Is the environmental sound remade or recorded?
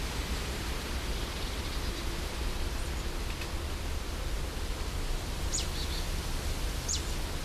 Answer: recorded